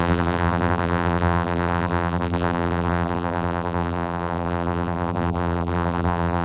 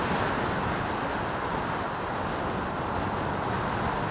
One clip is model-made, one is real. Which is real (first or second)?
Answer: second